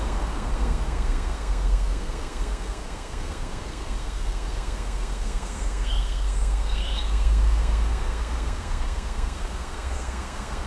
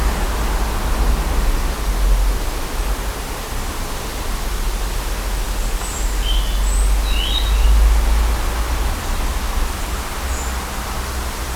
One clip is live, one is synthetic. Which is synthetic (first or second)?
first